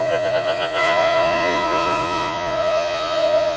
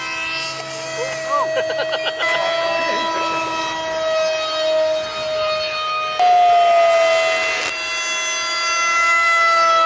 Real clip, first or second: second